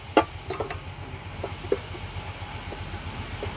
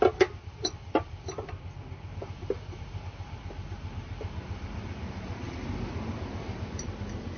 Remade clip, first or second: second